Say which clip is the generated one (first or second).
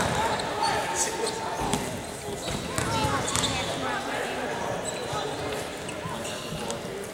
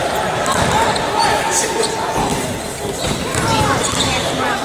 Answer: second